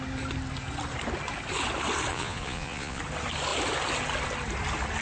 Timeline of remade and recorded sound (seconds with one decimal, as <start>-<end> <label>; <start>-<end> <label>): 0.0-2.1 recorded; 2.1-3.0 remade; 3.0-5.0 recorded